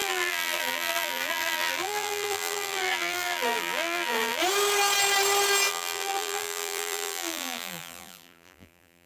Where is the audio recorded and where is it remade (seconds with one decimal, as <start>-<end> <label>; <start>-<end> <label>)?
0.0-4.4 remade; 4.4-5.7 recorded; 5.7-9.1 remade